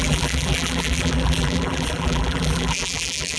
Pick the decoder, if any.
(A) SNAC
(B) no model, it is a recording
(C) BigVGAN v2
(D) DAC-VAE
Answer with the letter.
C